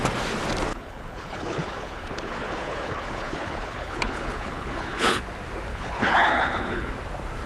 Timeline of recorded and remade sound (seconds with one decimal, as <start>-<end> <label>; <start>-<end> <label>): 0.0-0.7 recorded; 0.7-5.2 remade; 5.2-5.7 recorded; 5.7-6.9 remade; 6.9-7.5 recorded